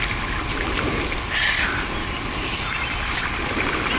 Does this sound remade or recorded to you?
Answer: recorded